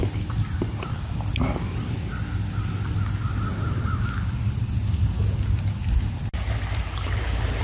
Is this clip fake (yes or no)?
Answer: no